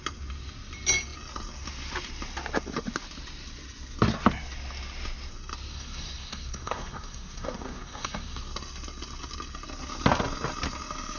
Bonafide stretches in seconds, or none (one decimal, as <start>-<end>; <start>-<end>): 0.0-5.7; 8.4-11.2

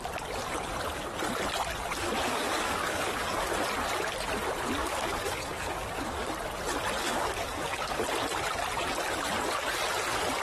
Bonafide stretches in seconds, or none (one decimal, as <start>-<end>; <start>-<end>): 0.0-2.3; 3.5-4.8; 6.3-7.0; 8.0-10.4